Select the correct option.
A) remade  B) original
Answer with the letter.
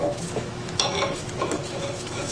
A